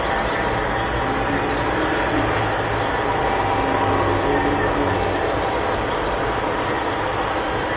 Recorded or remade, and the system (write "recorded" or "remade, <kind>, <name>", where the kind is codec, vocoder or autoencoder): recorded